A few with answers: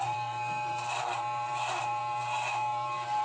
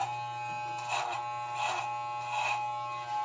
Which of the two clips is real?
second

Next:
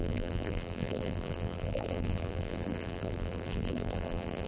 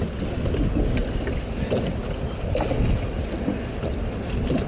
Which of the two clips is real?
second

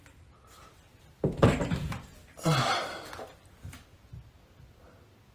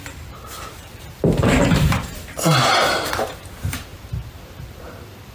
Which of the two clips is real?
first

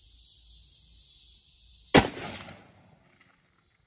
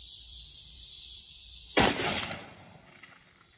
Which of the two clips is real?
first